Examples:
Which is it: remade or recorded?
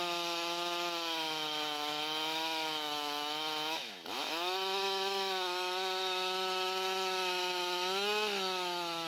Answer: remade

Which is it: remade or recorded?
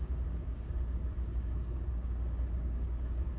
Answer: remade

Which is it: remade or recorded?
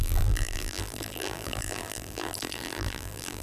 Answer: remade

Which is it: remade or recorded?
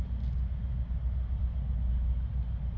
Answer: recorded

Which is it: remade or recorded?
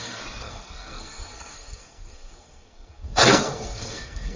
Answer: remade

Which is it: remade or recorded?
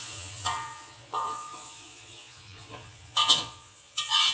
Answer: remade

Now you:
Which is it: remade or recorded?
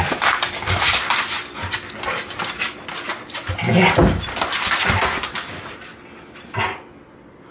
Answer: recorded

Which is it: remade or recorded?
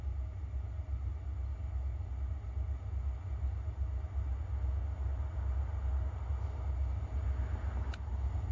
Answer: recorded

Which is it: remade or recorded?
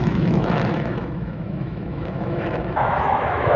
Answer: remade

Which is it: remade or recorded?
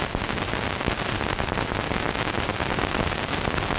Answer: recorded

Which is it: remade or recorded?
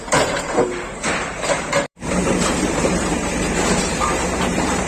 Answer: remade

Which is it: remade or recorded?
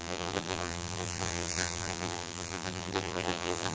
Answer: remade